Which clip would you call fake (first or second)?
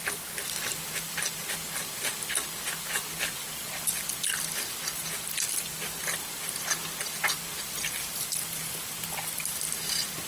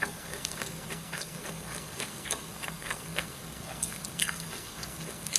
second